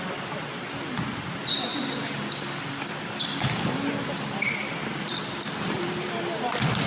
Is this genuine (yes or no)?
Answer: yes